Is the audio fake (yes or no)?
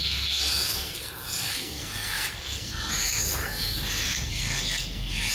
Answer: yes